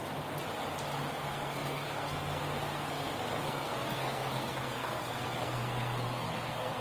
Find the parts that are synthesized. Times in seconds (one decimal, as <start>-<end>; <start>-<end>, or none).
1.1-6.8